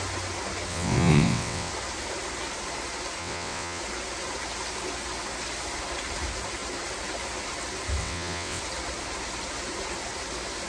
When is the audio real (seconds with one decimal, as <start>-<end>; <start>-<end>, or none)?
0.0-0.7; 1.7-3.2; 3.8-8.0; 8.6-10.7